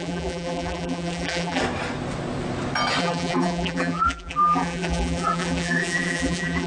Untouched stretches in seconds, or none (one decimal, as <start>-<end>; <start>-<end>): 1.6-3.0